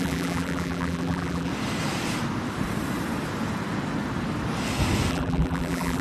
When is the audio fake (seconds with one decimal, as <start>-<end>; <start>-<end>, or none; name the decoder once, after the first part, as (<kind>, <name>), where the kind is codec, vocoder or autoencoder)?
0.0-1.5 (vocoder, BigVGAN v2); 5.1-6.0